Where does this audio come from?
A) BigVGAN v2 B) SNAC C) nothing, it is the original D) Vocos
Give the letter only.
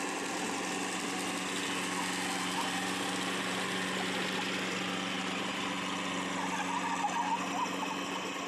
C